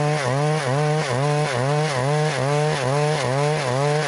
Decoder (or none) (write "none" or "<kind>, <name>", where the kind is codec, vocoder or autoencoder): none